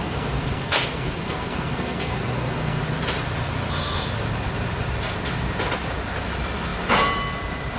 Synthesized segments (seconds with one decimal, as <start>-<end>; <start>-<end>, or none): 0.0-2.8